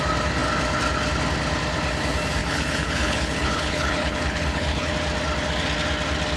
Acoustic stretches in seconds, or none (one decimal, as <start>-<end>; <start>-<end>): 0.0-2.4; 4.9-6.4